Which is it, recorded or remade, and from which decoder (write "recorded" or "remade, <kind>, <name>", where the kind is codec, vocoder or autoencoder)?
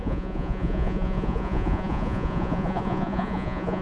remade, vocoder, Vocos